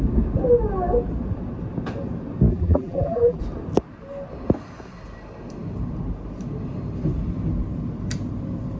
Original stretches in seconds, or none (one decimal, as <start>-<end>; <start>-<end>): 0.0-2.5; 3.4-8.8